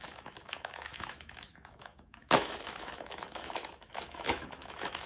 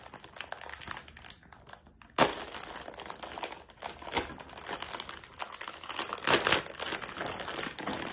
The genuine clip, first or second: second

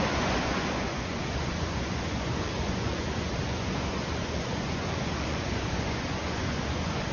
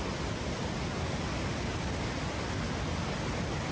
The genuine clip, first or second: second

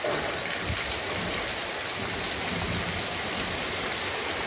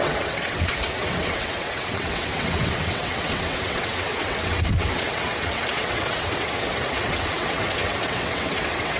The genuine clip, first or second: first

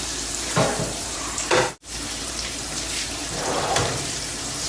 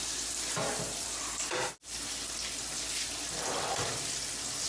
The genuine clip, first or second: second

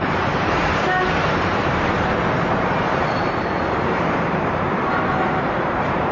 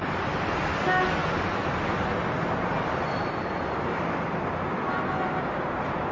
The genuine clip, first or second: second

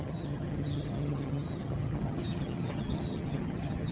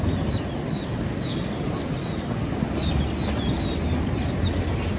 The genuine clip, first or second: second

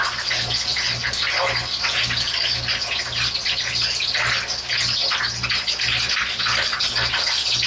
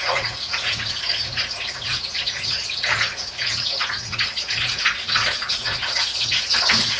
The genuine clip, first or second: first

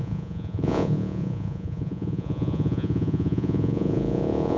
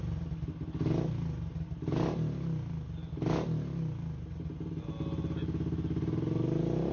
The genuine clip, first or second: second